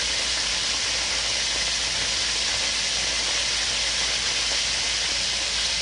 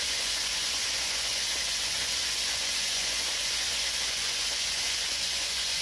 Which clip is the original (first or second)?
first